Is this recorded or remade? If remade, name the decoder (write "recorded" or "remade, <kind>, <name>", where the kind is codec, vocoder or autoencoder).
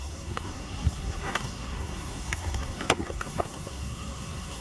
remade, codec, SNAC